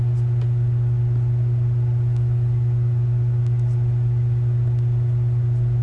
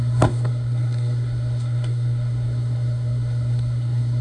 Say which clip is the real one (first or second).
first